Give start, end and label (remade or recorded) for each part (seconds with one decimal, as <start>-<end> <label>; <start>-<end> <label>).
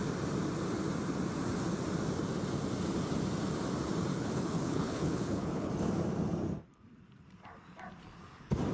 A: 0.0-4.1 recorded; 4.1-5.7 remade; 5.7-8.7 recorded